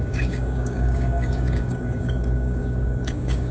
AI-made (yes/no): yes